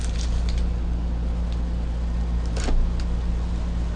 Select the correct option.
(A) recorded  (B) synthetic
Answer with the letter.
A